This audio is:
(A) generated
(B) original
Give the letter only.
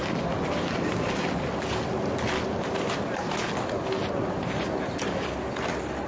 B